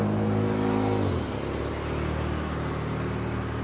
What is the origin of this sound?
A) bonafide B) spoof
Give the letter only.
A